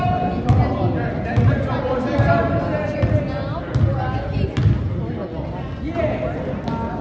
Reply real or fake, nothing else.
real